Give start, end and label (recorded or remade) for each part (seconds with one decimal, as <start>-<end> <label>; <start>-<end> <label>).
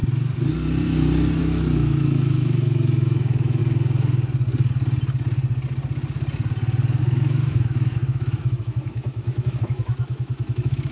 0.0-1.4 recorded; 1.4-3.6 remade; 3.6-7.0 recorded; 7.0-10.9 remade